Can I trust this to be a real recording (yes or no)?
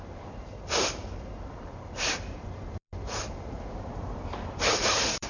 no